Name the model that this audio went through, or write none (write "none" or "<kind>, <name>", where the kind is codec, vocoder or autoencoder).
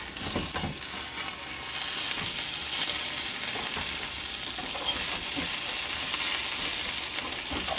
none